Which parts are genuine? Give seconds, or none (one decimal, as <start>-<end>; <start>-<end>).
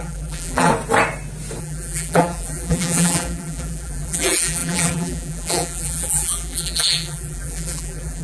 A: 0.7-1.6